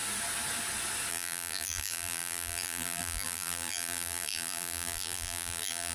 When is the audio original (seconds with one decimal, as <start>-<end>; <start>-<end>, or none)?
0.0-1.1